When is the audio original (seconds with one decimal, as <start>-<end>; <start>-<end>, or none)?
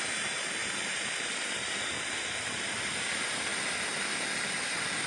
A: 0.0-5.1